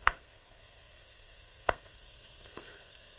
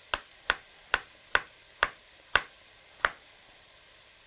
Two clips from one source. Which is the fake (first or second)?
first